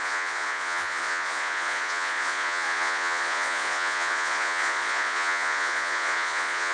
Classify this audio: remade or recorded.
remade